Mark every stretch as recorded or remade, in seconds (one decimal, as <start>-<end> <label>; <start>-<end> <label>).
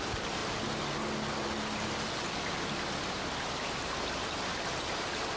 0.0-5.4 recorded